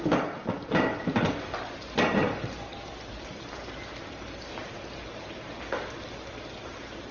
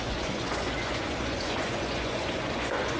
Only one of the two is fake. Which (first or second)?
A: second